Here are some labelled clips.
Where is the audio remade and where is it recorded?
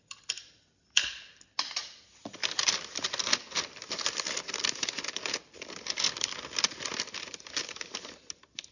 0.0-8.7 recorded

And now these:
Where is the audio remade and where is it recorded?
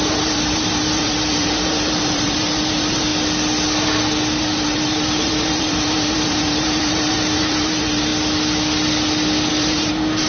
0.0-3.1 remade; 3.1-4.4 recorded; 4.4-8.1 remade; 8.1-9.5 recorded; 9.5-10.3 remade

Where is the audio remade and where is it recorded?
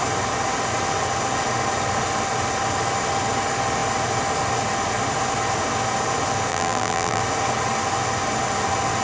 0.0-6.5 recorded; 6.5-7.2 remade; 7.2-9.0 recorded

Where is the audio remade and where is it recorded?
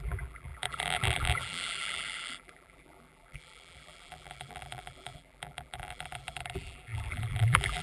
0.0-7.8 remade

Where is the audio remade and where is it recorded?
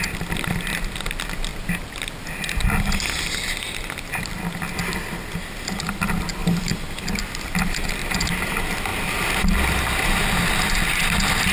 0.0-6.4 recorded; 6.4-7.2 remade; 7.2-8.0 recorded; 8.0-8.5 remade; 8.5-8.9 recorded; 8.9-11.0 remade; 11.0-11.5 recorded